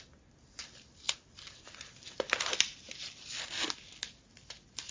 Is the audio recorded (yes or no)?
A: yes